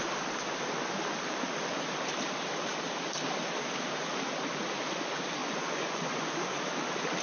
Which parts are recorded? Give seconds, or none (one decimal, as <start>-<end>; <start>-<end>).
0.0-5.4; 6.3-7.2